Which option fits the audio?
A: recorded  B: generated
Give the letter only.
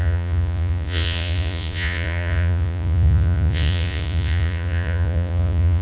B